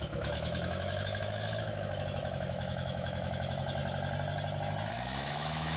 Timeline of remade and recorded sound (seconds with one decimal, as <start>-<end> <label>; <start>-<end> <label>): 0.0-3.8 remade; 3.8-4.9 recorded; 4.9-5.8 remade